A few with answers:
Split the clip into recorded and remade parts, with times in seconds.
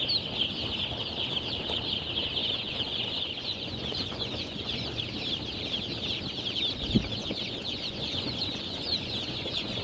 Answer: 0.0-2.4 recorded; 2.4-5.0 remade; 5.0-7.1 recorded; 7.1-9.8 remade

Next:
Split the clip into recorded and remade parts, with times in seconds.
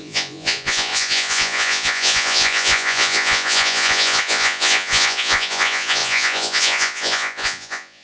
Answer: 0.0-8.0 remade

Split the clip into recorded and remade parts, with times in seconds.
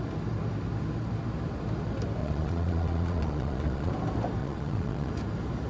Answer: 0.0-2.2 recorded; 2.2-3.9 remade; 3.9-4.4 recorded; 4.4-5.1 remade; 5.1-5.7 recorded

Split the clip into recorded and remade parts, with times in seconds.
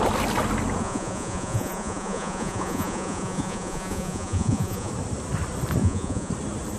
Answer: 0.0-0.8 recorded; 0.8-4.9 remade; 4.9-5.8 recorded; 5.8-6.3 remade; 6.3-6.8 recorded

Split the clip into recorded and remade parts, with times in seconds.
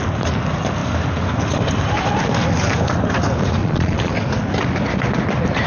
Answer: 0.0-3.6 recorded; 3.6-4.1 remade; 4.1-5.7 recorded